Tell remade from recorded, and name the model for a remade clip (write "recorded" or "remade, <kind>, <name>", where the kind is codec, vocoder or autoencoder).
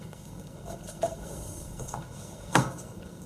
remade, codec, SNAC